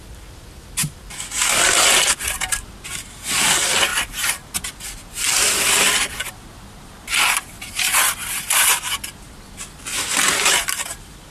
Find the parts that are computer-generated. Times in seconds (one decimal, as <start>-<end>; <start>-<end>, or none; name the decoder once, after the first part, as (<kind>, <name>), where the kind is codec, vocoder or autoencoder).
none